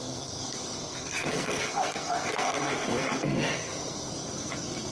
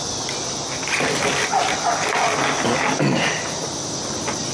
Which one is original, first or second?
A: second